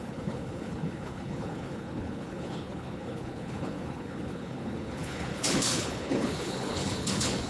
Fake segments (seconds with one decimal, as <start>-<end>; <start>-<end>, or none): 0.0-7.5